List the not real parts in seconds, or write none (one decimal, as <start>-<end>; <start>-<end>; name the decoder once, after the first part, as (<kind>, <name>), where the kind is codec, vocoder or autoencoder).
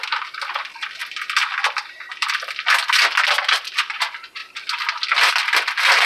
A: none